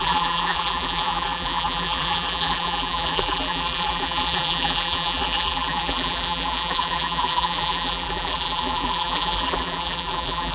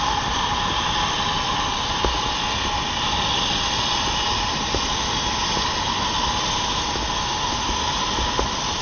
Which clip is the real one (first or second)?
second